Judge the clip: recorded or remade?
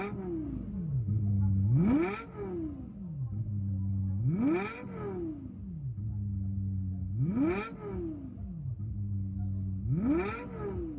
recorded